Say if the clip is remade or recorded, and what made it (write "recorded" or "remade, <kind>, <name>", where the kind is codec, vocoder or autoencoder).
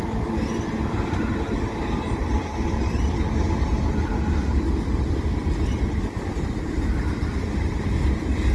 recorded